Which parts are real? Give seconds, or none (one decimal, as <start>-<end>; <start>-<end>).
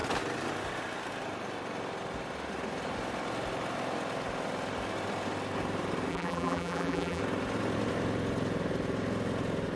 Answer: 0.0-6.1; 7.2-9.8